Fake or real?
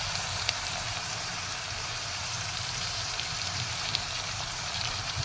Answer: fake